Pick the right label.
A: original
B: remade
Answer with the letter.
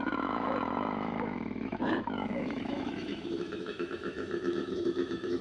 B